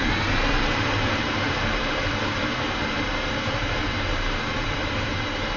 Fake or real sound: fake